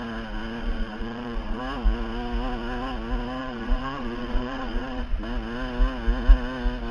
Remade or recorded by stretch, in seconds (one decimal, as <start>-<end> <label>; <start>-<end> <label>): 0.0-0.6 recorded; 0.6-1.6 remade; 1.6-3.4 recorded; 3.4-5.2 remade; 5.2-6.9 recorded